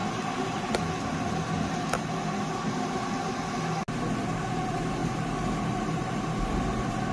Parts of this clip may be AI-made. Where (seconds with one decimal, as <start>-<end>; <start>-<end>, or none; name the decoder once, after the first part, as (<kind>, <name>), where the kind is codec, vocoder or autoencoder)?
5.0-6.2 (vocoder, BigVGAN v2)